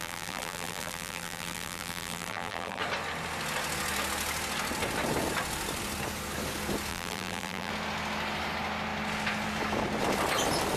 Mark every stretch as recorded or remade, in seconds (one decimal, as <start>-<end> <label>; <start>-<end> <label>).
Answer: 0.0-2.8 remade; 2.8-6.9 recorded; 6.9-7.7 remade; 7.7-10.8 recorded